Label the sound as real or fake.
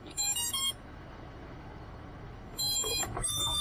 fake